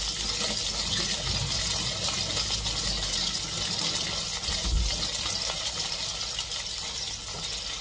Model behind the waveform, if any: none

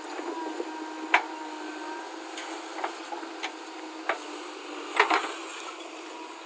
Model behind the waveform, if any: none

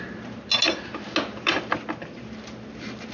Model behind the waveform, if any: none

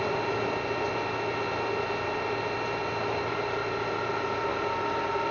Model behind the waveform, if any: none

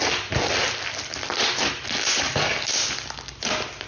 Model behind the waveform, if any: none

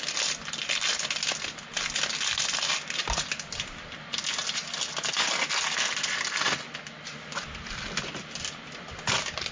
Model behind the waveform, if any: none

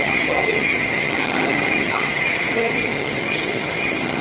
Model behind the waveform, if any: vocoder, HiFi-GAN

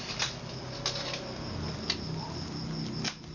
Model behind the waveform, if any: none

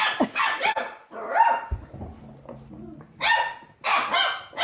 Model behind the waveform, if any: none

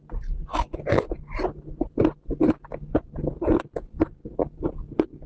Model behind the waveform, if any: none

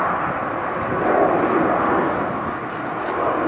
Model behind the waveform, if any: none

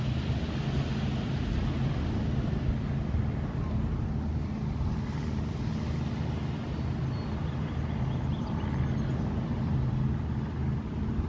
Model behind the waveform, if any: none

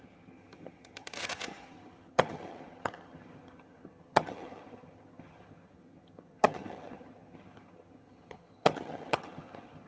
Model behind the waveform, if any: vocoder, HiFi-GAN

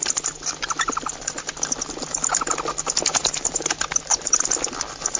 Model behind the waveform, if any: none